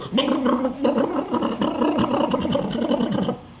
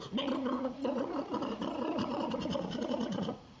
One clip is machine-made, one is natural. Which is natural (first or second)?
first